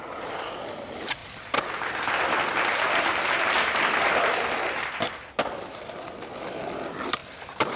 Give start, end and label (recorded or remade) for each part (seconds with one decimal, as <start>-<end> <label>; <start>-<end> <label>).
0.0-7.8 recorded